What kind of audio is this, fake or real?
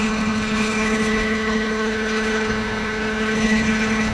fake